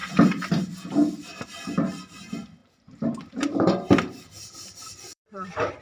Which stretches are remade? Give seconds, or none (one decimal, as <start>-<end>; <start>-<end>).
1.4-2.6; 3.3-5.8